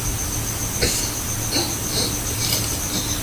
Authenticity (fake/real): real